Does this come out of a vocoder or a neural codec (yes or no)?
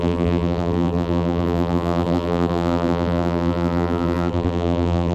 yes